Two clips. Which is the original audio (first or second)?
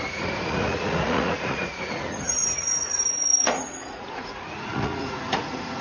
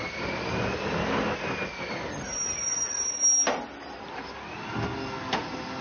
second